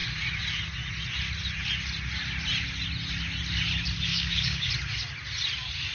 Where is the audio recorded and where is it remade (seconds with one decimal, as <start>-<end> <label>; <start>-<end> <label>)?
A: 0.0-4.1 recorded; 4.1-4.7 remade; 4.7-5.9 recorded